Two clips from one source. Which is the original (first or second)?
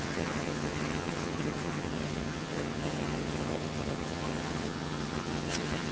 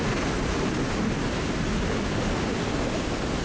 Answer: second